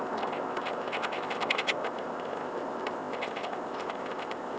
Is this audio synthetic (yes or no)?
yes